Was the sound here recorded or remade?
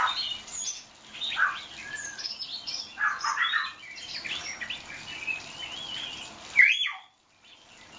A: recorded